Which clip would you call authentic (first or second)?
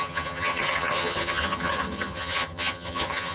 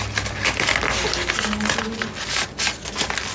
second